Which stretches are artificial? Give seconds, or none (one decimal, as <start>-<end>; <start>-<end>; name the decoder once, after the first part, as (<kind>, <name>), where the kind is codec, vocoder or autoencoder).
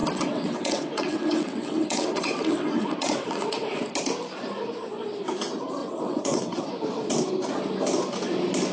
0.0-3.8 (vocoder, WaveNeXt); 5.8-6.6